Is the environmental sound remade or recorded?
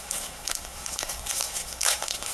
remade